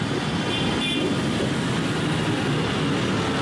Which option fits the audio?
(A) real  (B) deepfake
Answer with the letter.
A